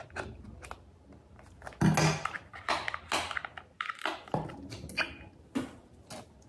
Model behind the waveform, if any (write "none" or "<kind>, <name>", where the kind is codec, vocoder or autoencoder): none